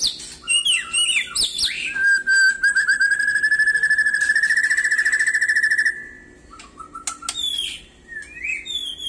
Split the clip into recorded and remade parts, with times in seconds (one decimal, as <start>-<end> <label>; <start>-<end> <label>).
0.0-9.1 recorded